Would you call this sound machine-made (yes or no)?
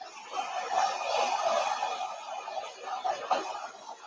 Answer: no